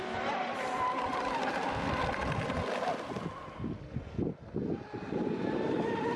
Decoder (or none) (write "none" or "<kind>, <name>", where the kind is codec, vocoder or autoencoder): none